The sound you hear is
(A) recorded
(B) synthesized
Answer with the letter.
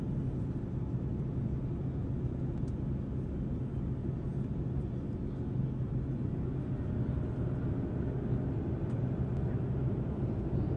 A